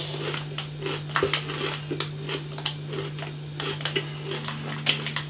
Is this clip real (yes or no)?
yes